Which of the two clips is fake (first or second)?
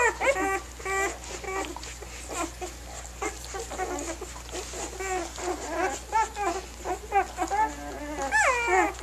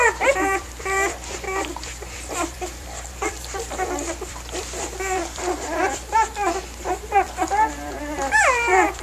second